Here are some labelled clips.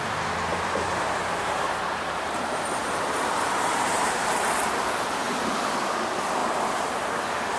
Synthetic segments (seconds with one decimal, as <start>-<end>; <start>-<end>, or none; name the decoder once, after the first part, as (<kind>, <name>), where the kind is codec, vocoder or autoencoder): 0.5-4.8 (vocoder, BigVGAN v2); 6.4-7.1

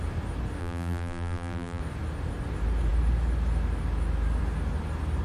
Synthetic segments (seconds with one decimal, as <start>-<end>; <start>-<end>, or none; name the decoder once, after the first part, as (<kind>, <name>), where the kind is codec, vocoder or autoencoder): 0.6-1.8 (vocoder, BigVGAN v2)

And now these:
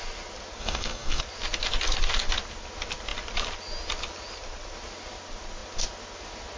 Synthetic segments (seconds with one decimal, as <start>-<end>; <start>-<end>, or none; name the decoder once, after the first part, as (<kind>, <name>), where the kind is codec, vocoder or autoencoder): 0.6-1.2 (codec, SNAC)